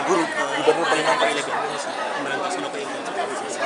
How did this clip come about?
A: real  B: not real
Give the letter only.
A